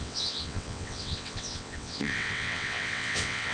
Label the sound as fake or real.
fake